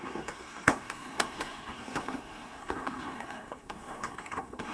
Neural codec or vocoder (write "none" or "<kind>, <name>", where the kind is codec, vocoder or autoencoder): codec, SNAC